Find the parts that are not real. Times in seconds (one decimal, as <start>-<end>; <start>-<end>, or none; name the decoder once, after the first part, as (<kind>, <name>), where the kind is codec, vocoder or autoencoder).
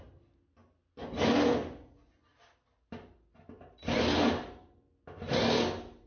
none